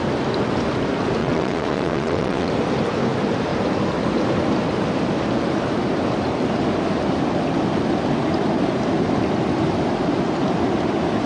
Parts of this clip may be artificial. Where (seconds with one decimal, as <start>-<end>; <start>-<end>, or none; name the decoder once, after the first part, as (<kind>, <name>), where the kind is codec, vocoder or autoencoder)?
1.2-2.5 (vocoder, WaveNeXt)